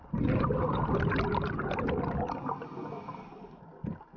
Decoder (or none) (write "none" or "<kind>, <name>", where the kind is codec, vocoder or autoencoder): none